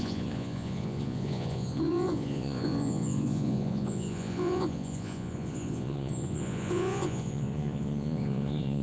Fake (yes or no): yes